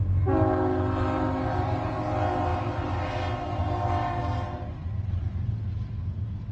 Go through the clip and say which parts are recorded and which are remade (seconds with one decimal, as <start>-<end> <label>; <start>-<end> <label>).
0.0-2.5 recorded; 2.5-3.0 remade; 3.0-3.6 recorded; 3.6-4.2 remade; 4.2-4.8 recorded; 4.8-5.5 remade; 5.5-6.5 recorded